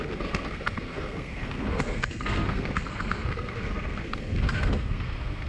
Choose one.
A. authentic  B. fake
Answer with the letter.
B